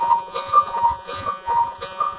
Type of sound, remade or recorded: remade